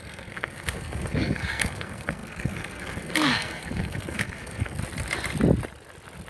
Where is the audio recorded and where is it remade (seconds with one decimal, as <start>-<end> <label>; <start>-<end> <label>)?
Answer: 0.0-4.8 remade; 4.8-6.3 recorded